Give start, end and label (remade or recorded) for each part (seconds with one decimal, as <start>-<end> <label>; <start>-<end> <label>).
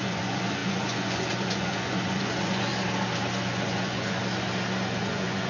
0.0-2.7 remade; 2.7-3.5 recorded; 3.5-4.2 remade; 4.2-5.0 recorded; 5.0-5.5 remade